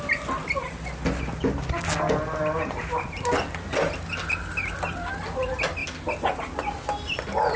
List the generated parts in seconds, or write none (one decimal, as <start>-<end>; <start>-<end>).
none